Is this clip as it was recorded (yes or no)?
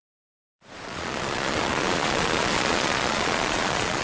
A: no